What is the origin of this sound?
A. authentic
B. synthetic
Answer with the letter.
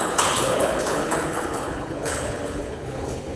B